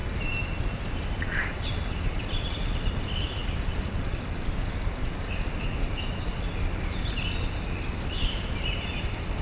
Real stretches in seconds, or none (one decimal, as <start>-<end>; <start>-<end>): 0.0-9.4